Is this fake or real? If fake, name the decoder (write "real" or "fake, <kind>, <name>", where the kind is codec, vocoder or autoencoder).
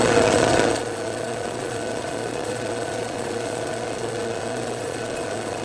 fake, vocoder, Vocos